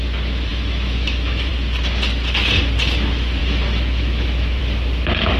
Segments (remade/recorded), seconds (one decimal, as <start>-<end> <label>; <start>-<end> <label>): 0.0-0.5 recorded; 0.5-1.5 remade; 1.5-3.4 recorded; 3.4-4.6 remade; 4.6-5.4 recorded